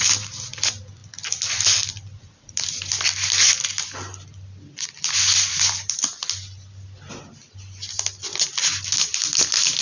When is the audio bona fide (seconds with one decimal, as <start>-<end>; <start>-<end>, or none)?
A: 0.0-9.8